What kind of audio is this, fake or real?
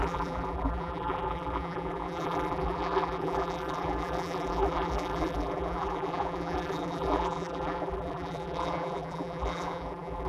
fake